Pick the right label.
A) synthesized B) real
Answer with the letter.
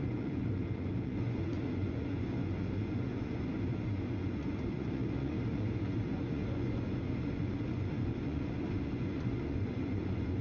A